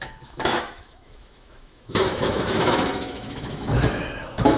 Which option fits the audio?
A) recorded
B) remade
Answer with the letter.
B